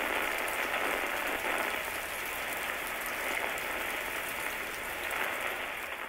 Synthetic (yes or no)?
no